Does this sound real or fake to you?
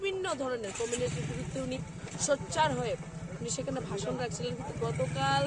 real